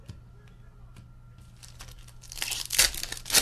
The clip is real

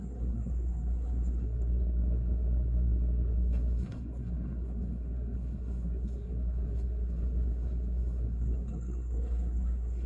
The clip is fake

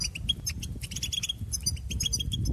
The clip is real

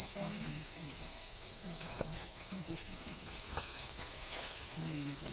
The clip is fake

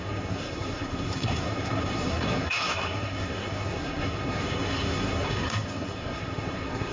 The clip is fake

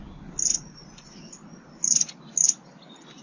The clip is real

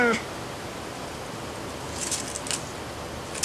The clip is real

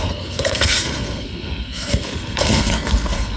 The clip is fake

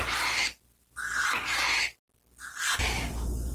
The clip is real